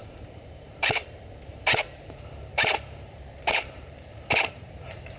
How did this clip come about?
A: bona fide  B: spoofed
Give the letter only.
B